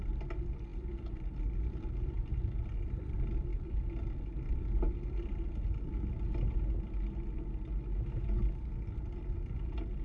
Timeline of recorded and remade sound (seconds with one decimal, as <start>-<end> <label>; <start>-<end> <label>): 0.0-10.0 recorded